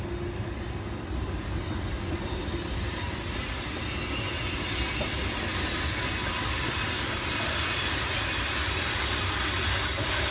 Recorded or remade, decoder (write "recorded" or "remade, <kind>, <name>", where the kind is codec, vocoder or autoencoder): recorded